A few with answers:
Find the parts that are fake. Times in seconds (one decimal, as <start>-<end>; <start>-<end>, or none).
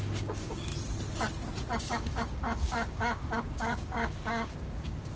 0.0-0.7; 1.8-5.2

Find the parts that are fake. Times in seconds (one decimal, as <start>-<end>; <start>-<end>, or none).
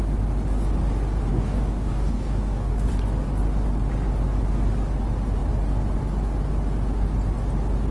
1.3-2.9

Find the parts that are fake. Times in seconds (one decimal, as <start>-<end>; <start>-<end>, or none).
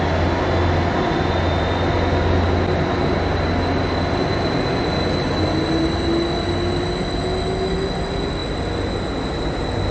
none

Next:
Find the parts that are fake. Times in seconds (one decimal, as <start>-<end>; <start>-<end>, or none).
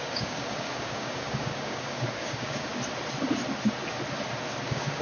0.0-2.7; 4.6-5.0